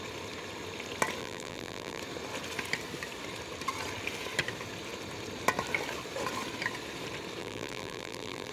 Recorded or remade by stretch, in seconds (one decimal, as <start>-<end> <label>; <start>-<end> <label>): 0.0-1.2 recorded; 1.2-2.0 remade; 2.0-7.4 recorded; 7.4-8.5 remade